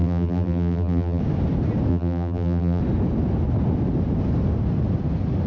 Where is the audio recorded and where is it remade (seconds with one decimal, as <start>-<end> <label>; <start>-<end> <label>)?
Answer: 0.0-1.2 remade; 1.2-1.9 recorded; 1.9-2.8 remade; 2.8-5.5 recorded